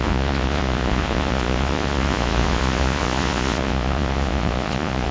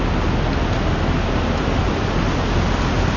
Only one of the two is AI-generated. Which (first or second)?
first